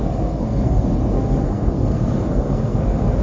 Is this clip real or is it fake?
fake